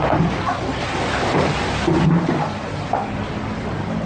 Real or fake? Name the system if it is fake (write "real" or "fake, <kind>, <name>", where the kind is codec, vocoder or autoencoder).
real